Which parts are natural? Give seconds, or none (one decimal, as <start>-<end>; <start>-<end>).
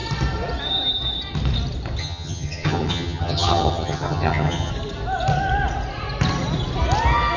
0.0-2.0; 4.7-7.4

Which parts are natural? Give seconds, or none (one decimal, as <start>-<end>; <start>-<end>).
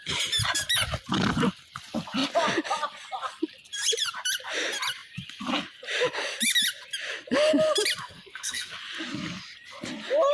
0.0-8.0; 8.7-10.3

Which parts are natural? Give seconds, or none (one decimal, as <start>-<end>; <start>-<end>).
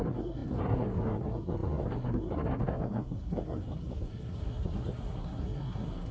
none